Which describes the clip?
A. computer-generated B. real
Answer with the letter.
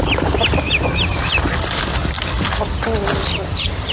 B